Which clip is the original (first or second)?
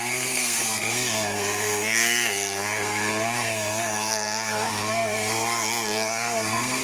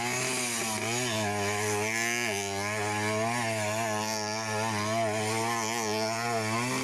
second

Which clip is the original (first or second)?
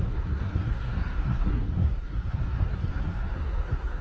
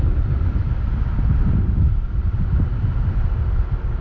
second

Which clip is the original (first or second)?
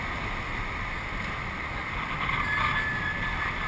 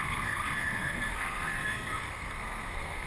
first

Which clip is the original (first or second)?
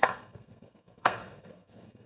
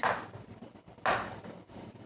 second